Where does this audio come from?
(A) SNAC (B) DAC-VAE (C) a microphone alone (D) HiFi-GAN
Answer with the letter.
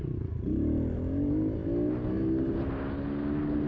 C